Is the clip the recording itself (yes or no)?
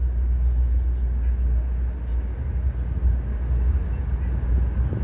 yes